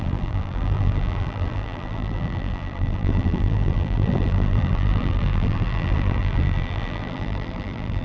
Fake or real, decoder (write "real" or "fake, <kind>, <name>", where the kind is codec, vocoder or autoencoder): fake, vocoder, BigVGAN v2